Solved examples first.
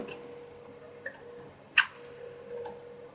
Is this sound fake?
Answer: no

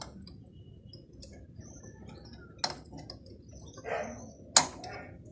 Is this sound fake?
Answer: no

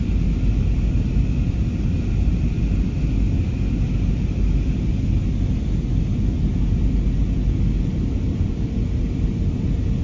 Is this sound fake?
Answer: no